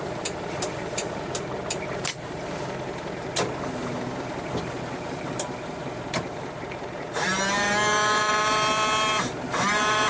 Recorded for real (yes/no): no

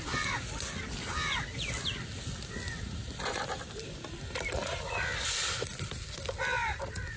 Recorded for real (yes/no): yes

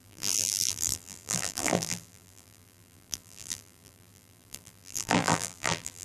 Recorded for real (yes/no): no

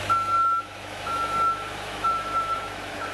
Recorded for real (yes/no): no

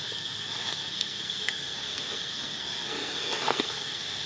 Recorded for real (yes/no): no